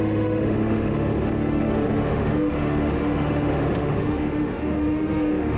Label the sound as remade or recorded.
remade